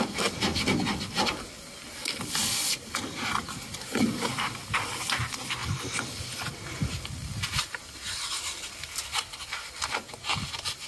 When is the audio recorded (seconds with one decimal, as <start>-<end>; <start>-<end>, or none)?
0.0-10.9